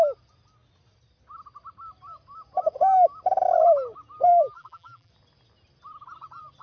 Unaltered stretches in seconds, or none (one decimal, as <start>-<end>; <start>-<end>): 0.0-4.3; 5.1-6.6